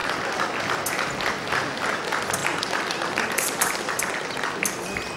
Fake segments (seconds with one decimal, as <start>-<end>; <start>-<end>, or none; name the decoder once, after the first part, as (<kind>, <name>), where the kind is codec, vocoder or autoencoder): 2.4-4.1 (vocoder, BigVGAN v2)